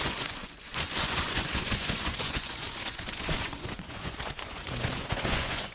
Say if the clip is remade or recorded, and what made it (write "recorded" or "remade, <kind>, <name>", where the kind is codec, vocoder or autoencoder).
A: remade, vocoder, Vocos